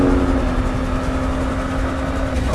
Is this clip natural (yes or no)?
yes